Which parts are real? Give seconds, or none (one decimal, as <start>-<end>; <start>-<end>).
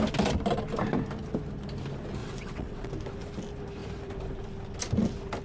0.0-2.2; 2.9-5.4